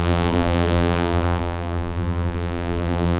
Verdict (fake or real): fake